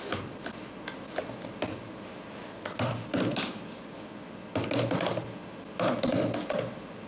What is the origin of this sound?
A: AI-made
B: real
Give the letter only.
B